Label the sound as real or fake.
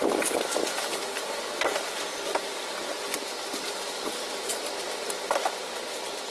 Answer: real